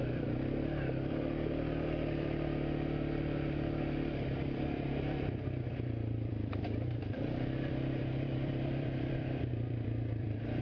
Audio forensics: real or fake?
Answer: fake